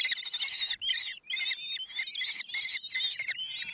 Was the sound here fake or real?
real